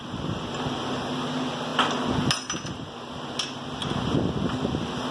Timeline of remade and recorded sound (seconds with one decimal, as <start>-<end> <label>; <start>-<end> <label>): 0.0-5.1 recorded